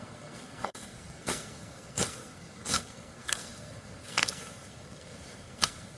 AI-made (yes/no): yes